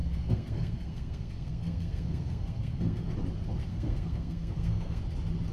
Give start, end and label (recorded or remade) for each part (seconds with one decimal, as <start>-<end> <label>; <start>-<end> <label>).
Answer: 0.0-3.1 remade; 3.1-3.7 recorded; 3.7-5.0 remade; 5.0-5.5 recorded

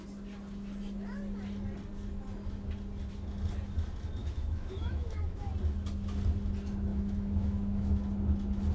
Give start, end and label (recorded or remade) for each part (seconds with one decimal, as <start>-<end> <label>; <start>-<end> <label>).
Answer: 0.0-4.2 recorded; 4.2-5.5 remade; 5.5-6.9 recorded; 6.9-8.0 remade; 8.0-8.7 recorded

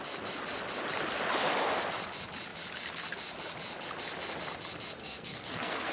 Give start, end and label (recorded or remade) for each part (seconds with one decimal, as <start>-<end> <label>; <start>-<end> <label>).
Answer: 0.0-5.0 recorded; 5.0-5.9 remade